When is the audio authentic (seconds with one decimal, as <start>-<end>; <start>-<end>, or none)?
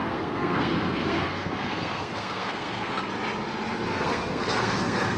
3.1-3.9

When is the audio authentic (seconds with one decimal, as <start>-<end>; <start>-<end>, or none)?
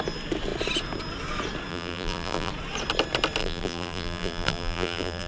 0.0-1.7; 2.5-3.4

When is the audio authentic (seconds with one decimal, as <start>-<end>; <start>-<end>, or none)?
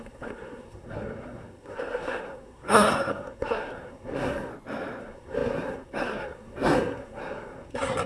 4.5-5.0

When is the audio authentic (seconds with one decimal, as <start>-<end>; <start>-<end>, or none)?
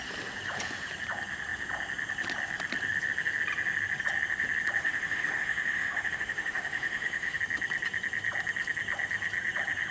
0.0-4.8; 7.4-9.9